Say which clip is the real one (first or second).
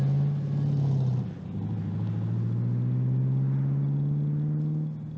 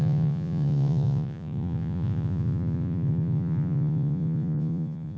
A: first